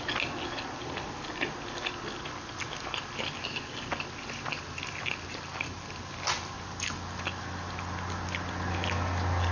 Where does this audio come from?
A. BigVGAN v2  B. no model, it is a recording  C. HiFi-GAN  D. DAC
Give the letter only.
B